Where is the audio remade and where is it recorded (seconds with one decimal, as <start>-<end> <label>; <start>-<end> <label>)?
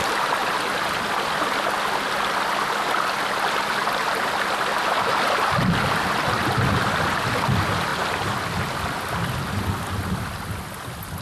0.0-11.2 recorded